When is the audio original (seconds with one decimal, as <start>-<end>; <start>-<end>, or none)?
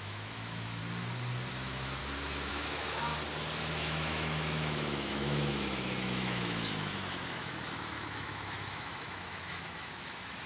0.8-1.5; 2.0-2.5; 3.1-3.7